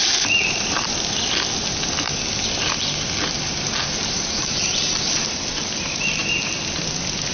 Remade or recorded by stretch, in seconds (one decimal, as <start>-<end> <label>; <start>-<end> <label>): 0.0-4.4 recorded; 4.4-6.2 remade; 6.2-7.3 recorded